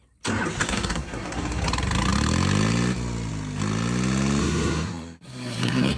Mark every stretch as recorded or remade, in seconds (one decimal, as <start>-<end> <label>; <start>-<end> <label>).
0.0-0.6 recorded; 0.6-1.6 remade; 1.6-4.4 recorded; 4.4-6.0 remade